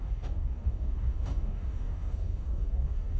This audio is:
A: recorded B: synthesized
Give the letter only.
B